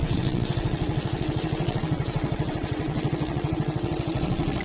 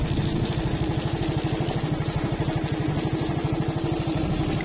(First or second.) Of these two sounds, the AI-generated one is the first